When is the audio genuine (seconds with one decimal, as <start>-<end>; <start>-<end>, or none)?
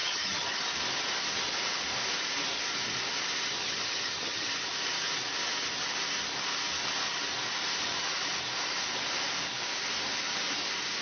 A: 0.6-3.6; 4.5-11.0